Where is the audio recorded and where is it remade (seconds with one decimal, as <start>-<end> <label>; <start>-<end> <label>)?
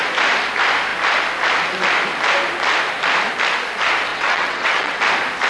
0.0-4.1 recorded; 4.1-5.0 remade; 5.0-5.5 recorded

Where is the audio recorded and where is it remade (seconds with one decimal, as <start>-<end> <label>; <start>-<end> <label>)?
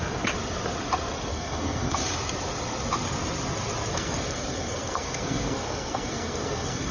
0.0-1.3 recorded; 1.3-2.0 remade; 2.0-3.9 recorded; 3.9-6.9 remade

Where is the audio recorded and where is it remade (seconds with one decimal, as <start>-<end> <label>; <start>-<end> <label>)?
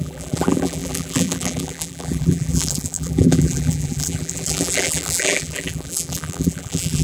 0.0-7.0 remade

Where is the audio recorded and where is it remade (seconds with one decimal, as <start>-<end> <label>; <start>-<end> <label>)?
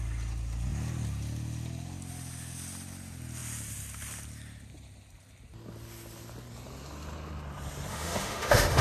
0.0-7.9 recorded; 7.9-8.8 remade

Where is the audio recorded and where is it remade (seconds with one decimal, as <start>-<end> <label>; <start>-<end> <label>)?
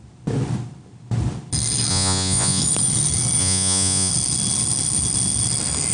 0.0-1.9 recorded; 1.9-2.6 remade; 2.6-3.4 recorded; 3.4-4.1 remade; 4.1-5.9 recorded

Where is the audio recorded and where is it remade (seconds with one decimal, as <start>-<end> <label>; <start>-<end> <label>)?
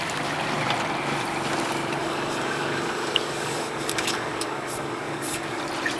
0.0-2.0 recorded; 2.0-5.6 remade; 5.6-6.0 recorded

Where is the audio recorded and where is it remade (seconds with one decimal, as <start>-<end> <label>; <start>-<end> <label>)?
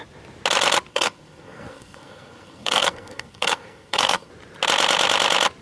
0.0-0.9 recorded; 0.9-4.3 remade; 4.3-5.6 recorded